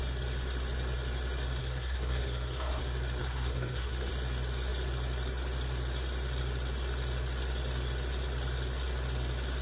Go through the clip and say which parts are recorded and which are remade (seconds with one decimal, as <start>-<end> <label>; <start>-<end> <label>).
0.0-1.6 recorded; 1.6-2.8 remade; 2.8-3.2 recorded; 3.2-4.1 remade; 4.1-9.6 recorded